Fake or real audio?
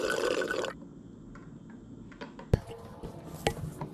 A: real